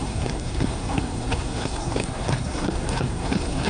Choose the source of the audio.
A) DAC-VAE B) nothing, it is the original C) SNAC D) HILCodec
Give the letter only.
C